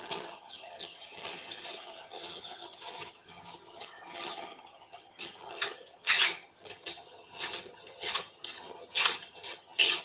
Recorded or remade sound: remade